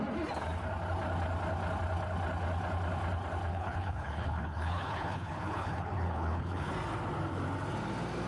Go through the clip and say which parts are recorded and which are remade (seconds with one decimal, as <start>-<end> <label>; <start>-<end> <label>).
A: 0.0-3.5 recorded; 3.5-6.7 remade; 6.7-8.3 recorded